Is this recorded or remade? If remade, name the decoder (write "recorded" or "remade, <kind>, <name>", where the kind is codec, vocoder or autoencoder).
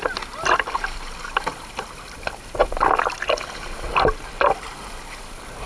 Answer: recorded